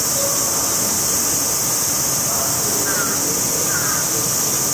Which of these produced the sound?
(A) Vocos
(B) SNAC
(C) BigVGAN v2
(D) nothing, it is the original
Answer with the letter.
D